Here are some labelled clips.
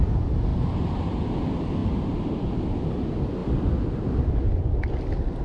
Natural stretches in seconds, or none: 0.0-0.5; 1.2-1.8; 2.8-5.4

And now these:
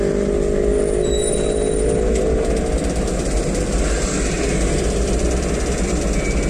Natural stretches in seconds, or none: 0.0-6.5

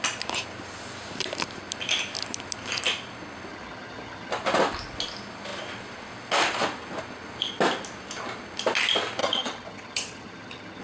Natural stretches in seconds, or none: 0.0-3.5; 4.3-9.2

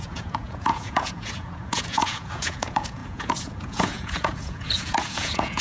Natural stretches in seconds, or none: none

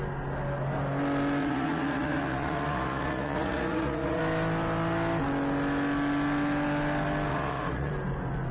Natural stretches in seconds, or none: 0.0-1.4; 4.2-7.3; 7.9-8.5

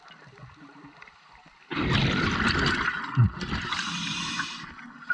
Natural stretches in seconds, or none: 0.0-5.1

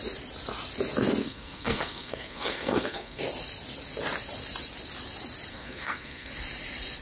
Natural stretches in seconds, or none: 0.0-1.2; 3.2-5.5; 6.3-7.0